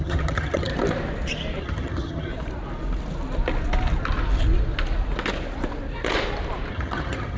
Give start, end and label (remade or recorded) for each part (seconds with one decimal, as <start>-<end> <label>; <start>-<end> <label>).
0.0-0.7 remade; 0.7-1.6 recorded; 1.6-2.3 remade; 2.3-6.7 recorded; 6.7-7.4 remade